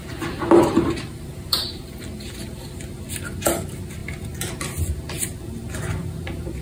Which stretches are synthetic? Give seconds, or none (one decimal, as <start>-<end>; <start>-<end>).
0.0-6.6